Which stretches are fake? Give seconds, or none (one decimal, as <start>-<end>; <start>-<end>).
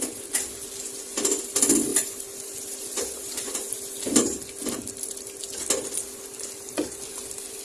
1.9-4.2